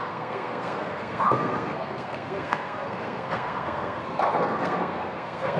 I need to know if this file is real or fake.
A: fake